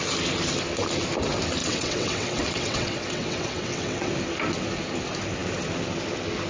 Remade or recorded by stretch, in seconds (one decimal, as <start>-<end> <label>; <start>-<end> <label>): 0.0-1.6 recorded; 1.6-4.1 remade; 4.1-6.5 recorded